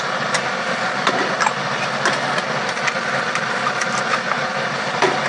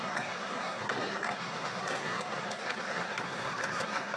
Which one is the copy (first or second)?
second